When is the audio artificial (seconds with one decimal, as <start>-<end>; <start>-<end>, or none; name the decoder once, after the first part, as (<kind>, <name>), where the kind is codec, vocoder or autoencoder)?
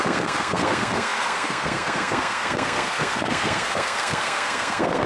0.0-5.1 (codec, SNAC)